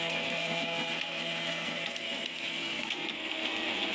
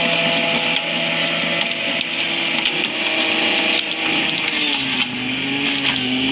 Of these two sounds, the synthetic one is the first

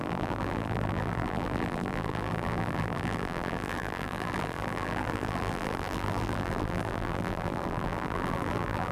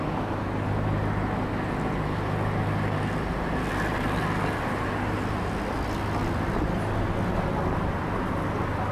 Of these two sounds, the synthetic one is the first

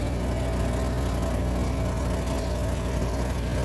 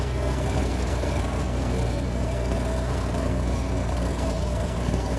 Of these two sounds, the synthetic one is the second